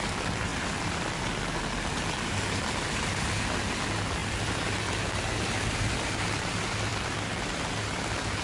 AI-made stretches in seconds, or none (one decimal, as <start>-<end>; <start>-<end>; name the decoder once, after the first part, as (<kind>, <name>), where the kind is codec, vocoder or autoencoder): none